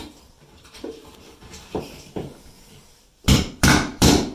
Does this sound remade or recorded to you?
remade